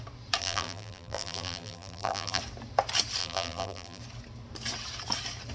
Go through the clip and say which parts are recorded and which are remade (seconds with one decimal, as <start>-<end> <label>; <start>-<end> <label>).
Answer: 0.0-0.4 recorded; 0.4-2.4 remade; 2.4-3.2 recorded; 3.2-4.0 remade; 4.0-5.5 recorded